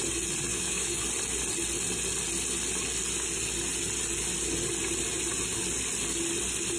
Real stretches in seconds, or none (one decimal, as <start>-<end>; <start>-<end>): 0.0-0.5; 1.0-6.8